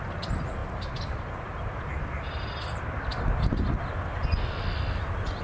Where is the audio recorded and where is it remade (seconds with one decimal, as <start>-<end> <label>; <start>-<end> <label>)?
0.0-0.6 recorded; 0.6-1.8 remade; 1.8-5.4 recorded